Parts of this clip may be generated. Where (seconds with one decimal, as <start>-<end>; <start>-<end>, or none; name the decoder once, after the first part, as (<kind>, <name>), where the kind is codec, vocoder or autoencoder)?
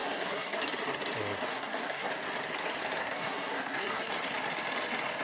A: 0.0-0.6 (codec, SNAC); 1.5-2.1; 3.0-4.1